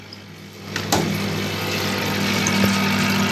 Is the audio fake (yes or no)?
no